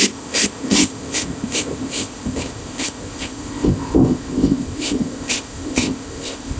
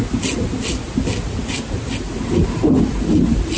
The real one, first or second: second